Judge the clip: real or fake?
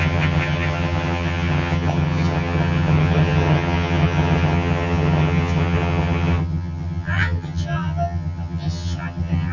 fake